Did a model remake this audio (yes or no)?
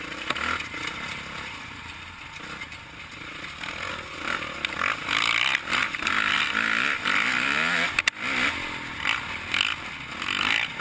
no